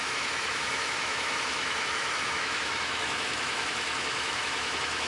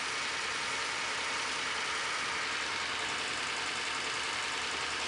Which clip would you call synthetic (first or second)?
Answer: first